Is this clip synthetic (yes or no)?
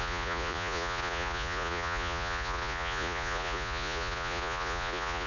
yes